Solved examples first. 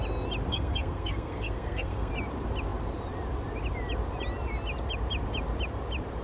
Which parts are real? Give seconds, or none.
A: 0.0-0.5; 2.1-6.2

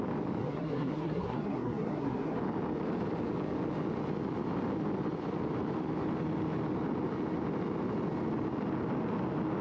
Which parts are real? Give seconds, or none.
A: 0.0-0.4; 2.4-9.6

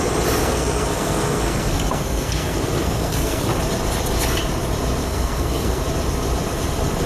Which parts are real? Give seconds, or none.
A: 0.0-0.4; 3.5-5.0; 5.8-7.1

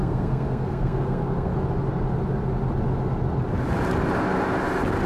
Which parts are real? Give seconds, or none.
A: 1.5-5.1

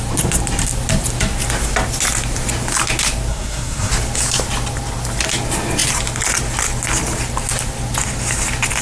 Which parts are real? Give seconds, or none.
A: 0.0-3.3; 3.9-8.8

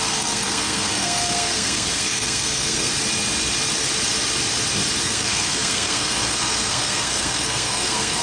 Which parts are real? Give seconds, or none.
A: 2.9-5.0

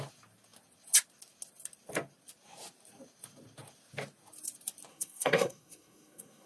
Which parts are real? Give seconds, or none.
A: 0.0-4.9

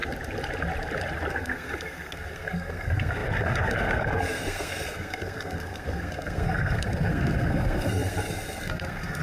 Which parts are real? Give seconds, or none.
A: 0.0-1.3